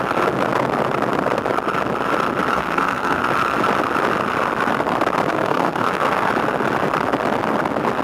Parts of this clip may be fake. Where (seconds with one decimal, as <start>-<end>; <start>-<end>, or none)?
2.5-3.2; 5.3-6.3